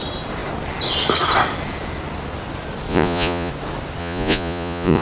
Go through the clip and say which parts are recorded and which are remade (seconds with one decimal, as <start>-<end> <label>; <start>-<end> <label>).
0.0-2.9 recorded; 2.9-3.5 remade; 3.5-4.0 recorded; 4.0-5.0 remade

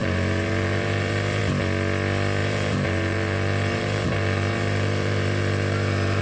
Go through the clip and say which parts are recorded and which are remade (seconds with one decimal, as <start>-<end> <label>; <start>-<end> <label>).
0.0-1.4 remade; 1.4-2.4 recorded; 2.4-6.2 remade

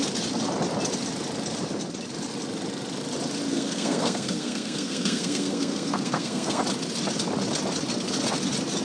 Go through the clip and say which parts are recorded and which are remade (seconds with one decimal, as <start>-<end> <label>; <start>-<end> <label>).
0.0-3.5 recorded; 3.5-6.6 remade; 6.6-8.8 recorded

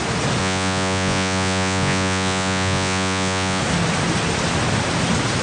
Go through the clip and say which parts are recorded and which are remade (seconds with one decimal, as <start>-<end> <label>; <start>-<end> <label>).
0.0-0.4 recorded; 0.4-3.6 remade; 3.6-5.4 recorded

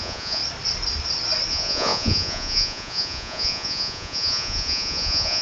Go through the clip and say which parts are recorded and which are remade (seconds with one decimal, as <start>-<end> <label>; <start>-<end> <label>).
0.0-0.4 remade; 0.4-1.5 recorded; 1.5-5.4 remade

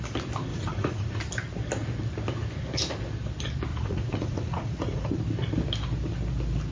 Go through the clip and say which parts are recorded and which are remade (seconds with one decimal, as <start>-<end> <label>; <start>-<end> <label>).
0.0-0.5 recorded; 0.5-1.2 remade; 1.2-3.7 recorded; 3.7-5.2 remade; 5.2-6.7 recorded